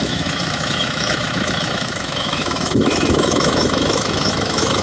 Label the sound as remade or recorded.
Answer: remade